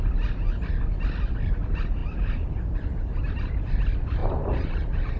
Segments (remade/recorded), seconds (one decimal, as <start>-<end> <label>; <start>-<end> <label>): 0.0-2.0 recorded; 2.0-3.7 remade; 3.7-4.2 recorded; 4.2-5.2 remade